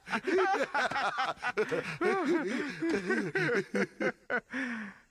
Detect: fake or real real